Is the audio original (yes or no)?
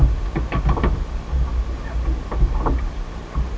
yes